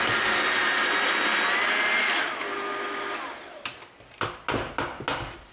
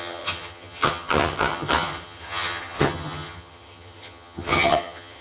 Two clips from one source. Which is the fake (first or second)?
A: second